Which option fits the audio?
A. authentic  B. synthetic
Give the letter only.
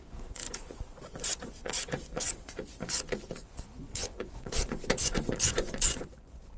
B